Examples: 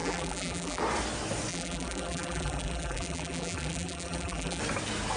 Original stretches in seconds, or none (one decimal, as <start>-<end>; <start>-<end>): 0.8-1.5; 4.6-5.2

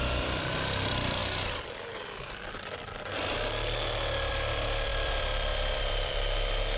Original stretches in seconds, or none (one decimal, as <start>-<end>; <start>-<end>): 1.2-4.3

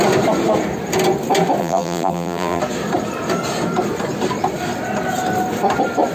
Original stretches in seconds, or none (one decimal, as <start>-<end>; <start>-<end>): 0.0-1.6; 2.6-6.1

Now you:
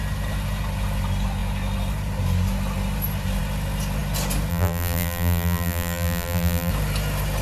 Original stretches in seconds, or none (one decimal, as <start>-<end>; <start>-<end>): 0.0-4.5; 6.7-7.4